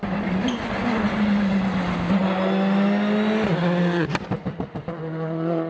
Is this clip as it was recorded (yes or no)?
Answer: yes